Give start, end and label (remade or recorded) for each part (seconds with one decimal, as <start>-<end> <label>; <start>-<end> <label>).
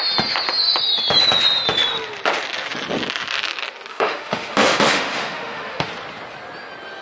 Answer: 0.0-3.9 recorded; 3.9-5.9 remade; 5.9-7.0 recorded